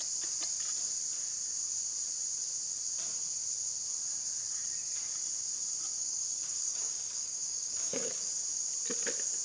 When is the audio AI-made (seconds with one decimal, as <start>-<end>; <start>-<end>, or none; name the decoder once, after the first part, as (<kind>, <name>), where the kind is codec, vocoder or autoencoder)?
6.0-8.4 (codec, DAC)

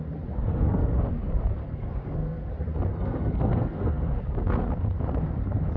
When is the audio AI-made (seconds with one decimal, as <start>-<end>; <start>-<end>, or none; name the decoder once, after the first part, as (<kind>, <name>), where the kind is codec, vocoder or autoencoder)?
0.5-1.1 (codec, SNAC); 1.6-2.5; 2.9-4.2

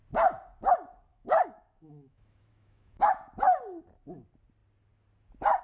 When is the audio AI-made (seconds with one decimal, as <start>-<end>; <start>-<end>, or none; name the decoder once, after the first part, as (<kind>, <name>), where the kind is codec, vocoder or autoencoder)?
1.1-3.1 (autoencoder, DAC-VAE)

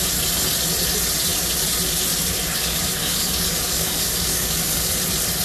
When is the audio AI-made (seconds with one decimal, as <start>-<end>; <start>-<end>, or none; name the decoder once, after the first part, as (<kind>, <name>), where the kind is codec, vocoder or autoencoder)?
2.6-4.9 (codec, DAC)

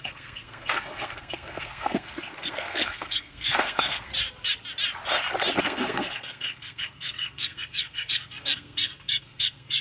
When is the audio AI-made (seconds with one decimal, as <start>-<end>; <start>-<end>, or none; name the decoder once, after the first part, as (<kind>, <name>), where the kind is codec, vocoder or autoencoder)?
0.0-4.1 (codec, SNAC); 5.6-9.8